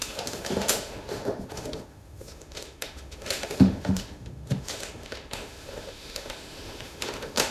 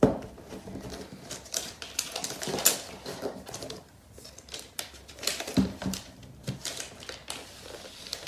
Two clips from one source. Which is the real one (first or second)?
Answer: second